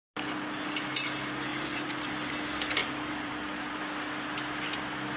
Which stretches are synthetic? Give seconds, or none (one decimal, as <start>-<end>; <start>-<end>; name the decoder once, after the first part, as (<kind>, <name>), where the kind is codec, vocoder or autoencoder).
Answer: 1.5-2.3 (vocoder, BigVGAN v2); 2.8-3.8